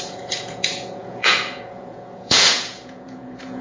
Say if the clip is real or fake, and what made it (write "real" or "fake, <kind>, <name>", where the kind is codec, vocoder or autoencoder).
fake, vocoder, Vocos